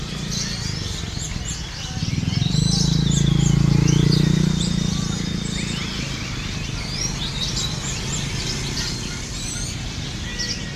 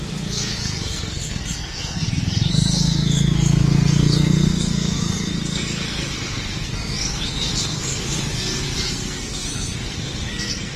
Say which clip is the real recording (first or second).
first